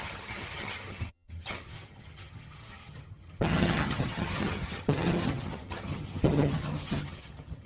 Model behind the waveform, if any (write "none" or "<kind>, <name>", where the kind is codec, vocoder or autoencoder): vocoder, HiFi-GAN